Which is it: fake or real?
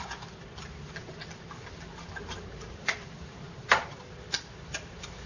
real